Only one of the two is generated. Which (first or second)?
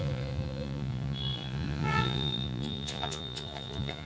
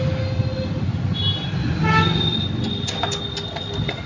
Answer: first